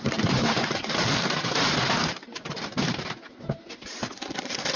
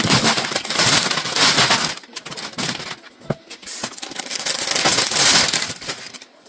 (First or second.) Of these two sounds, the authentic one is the second